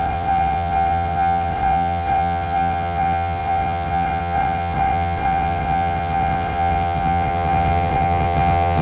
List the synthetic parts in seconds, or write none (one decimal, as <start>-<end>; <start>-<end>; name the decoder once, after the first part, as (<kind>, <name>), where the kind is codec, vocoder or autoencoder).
0.0-8.8 (vocoder, WaveNeXt)